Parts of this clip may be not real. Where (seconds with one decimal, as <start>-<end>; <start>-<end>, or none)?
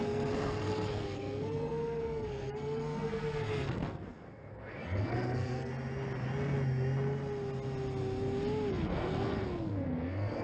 0.0-5.7; 8.7-10.4